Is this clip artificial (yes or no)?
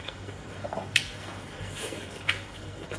yes